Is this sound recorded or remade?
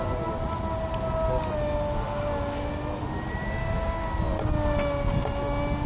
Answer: recorded